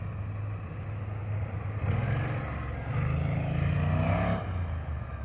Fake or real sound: real